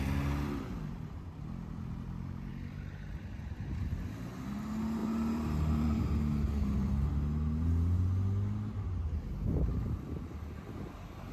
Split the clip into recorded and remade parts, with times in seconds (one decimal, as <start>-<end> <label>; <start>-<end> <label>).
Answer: 0.0-5.0 recorded; 5.0-6.0 remade; 6.0-6.6 recorded; 6.6-7.1 remade; 7.1-11.3 recorded